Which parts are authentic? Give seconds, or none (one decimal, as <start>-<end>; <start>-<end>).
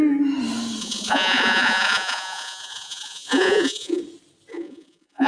0.0-0.8; 4.0-4.5